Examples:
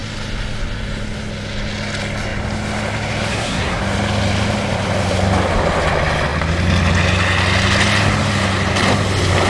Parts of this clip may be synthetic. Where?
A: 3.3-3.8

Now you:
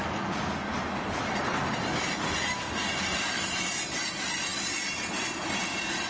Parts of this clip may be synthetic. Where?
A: none

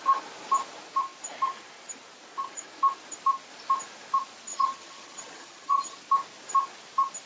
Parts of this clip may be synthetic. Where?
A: 4.5-6.0

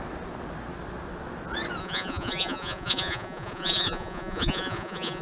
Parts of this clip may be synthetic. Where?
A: 1.8-5.2

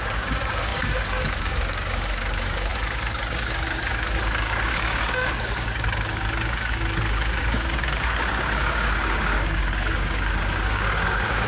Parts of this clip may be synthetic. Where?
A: 0.0-11.5

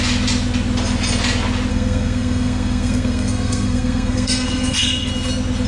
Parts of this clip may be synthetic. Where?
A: 1.7-5.1

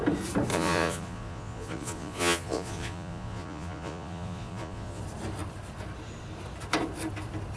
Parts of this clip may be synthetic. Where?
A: 0.5-5.0